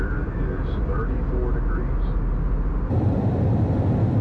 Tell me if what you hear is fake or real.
real